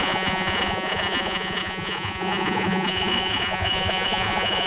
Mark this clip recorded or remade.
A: remade